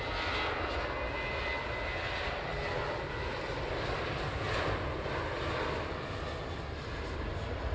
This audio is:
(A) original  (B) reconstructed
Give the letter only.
A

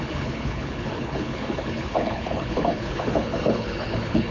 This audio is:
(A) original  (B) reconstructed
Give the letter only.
B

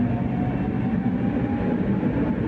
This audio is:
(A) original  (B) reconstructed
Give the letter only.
A